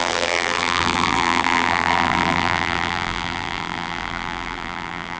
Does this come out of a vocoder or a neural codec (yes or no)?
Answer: yes